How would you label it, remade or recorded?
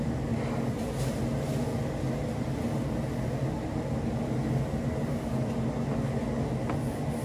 recorded